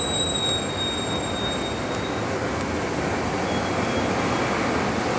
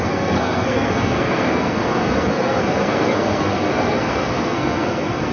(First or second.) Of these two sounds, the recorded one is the first